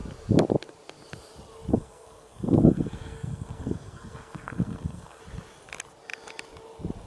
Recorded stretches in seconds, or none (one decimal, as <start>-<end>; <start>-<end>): 0.0-1.7; 5.2-7.1